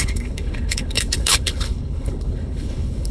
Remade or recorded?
remade